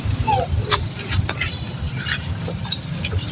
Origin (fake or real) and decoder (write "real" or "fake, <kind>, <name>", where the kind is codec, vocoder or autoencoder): fake, vocoder, BigVGAN v2